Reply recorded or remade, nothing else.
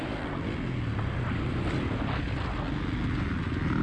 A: recorded